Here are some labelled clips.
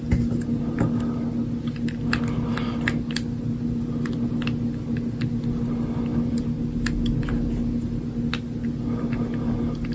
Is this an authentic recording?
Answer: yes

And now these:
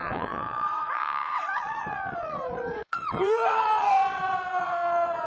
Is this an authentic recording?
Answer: no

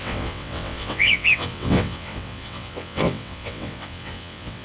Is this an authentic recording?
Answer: no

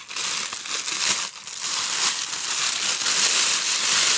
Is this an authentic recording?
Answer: yes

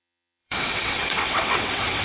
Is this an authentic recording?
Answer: no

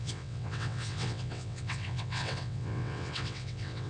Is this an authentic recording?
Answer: no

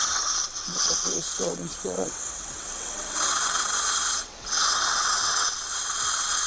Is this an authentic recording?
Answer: no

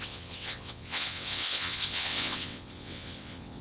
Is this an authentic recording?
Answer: no